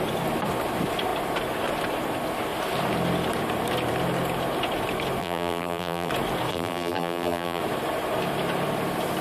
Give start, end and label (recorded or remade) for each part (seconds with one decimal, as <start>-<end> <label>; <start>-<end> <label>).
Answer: 0.0-5.2 recorded; 5.2-6.1 remade; 6.1-6.5 recorded; 6.5-7.6 remade; 7.6-9.2 recorded